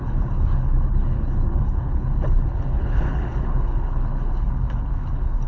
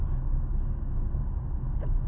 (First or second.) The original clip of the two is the second